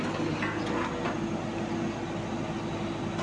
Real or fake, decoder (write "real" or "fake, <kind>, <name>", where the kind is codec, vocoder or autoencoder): real